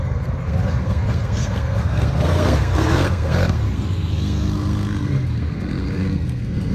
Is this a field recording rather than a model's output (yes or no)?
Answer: no